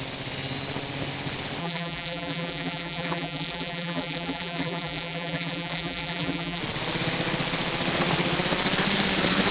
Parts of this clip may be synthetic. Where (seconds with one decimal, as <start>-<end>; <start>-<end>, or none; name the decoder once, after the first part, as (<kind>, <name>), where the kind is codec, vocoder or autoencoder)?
1.6-6.6 (vocoder, BigVGAN v2)